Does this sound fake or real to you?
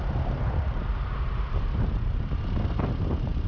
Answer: real